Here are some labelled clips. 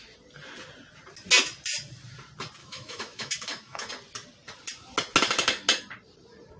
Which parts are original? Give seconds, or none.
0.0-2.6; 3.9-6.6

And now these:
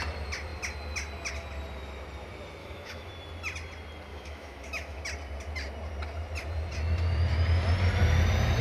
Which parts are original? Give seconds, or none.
0.0-2.6; 3.1-4.1; 5.0-8.6